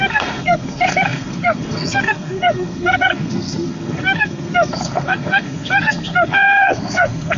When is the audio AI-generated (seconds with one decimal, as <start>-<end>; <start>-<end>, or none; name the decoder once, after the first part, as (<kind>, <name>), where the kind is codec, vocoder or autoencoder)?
0.0-7.4 (codec, SNAC)